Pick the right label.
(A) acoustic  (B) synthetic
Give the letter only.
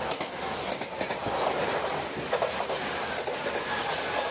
A